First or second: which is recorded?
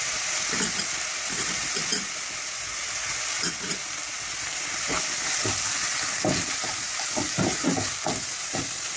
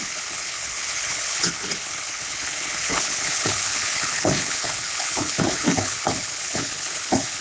first